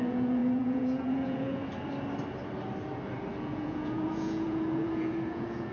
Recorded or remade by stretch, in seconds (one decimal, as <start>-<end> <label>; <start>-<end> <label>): 0.0-1.6 remade; 1.6-3.4 recorded; 3.4-5.7 remade